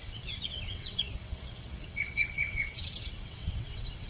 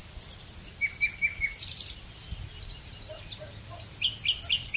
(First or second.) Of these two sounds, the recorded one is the second